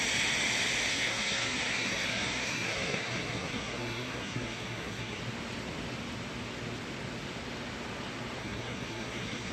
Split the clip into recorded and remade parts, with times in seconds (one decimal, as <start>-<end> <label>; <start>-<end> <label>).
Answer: 0.0-0.9 recorded; 0.9-5.2 remade; 5.2-8.4 recorded; 8.4-9.5 remade